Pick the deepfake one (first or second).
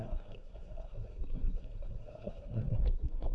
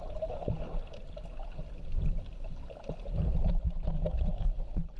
first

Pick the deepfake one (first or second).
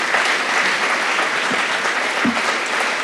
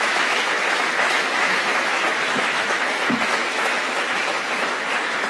second